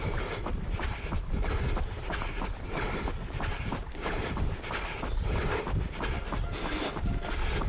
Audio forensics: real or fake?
real